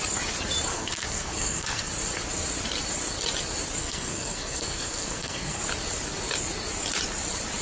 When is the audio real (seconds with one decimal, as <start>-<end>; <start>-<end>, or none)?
0.0-0.7; 1.9-3.8; 5.6-7.6